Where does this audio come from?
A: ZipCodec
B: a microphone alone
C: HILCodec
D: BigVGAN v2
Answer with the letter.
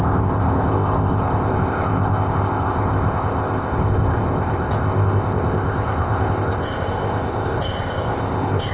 A